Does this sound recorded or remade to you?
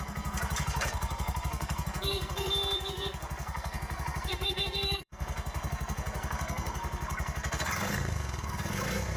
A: remade